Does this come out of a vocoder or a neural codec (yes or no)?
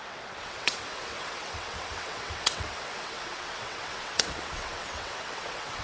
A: yes